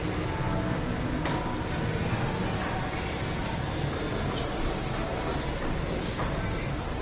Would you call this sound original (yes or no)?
yes